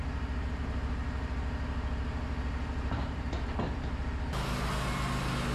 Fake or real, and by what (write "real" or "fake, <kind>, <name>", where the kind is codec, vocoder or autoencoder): real